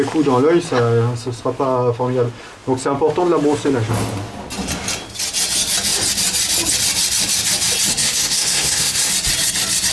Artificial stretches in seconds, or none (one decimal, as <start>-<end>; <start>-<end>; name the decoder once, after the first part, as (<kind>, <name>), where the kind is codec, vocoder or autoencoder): 7.9-9.1 (codec, SNAC)